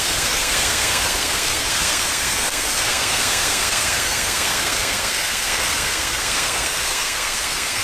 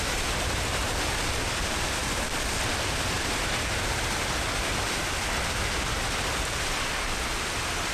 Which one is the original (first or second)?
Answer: second